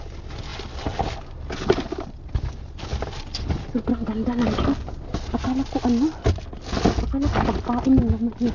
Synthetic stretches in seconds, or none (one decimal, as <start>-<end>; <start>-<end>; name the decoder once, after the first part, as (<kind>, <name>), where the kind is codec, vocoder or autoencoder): none

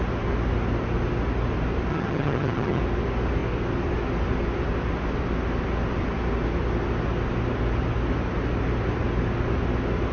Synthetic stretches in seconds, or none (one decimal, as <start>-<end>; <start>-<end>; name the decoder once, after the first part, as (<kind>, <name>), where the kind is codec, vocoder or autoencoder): 1.9-2.8 (vocoder, HiFi-GAN)